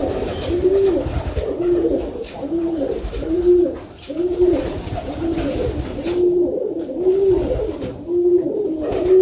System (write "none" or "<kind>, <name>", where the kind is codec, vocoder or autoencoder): vocoder, BigVGAN v2